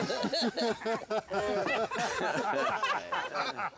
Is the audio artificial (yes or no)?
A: no